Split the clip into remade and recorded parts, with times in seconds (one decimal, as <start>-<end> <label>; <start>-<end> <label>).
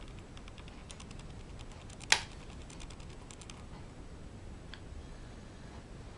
0.0-5.0 recorded; 5.0-5.8 remade; 5.8-6.2 recorded